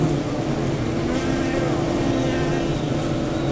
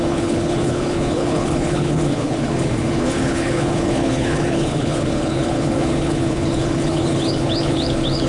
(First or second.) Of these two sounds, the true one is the first